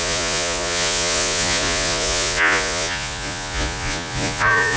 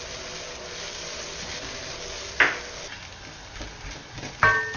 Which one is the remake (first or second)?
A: first